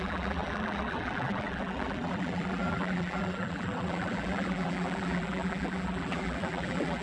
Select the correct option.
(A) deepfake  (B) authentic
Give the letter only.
A